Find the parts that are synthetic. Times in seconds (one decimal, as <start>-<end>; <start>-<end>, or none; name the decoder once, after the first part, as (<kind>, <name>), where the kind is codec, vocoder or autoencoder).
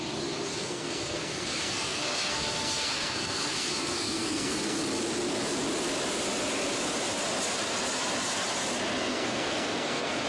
0.5-4.8 (codec, SNAC); 9.0-10.3